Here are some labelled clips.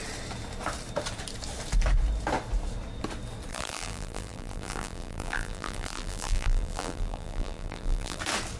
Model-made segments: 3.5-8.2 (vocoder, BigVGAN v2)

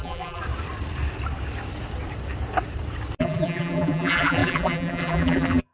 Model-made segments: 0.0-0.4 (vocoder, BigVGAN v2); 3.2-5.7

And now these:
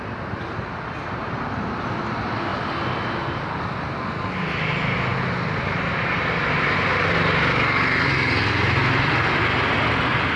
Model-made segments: none

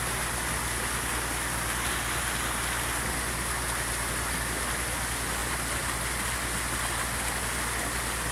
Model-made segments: none

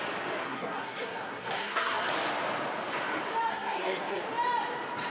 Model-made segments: 0.4-2.0 (codec, SNAC); 3.5-4.2